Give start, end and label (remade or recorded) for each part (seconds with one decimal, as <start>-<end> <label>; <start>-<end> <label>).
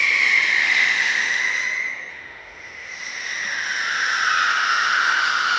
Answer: 0.0-0.6 recorded; 0.6-1.4 remade; 1.4-2.1 recorded; 2.1-2.9 remade; 2.9-4.5 recorded; 4.5-5.6 remade